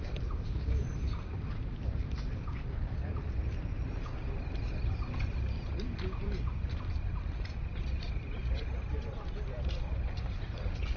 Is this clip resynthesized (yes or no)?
yes